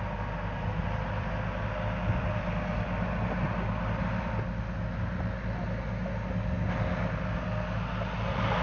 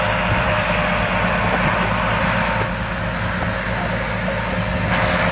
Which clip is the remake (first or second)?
first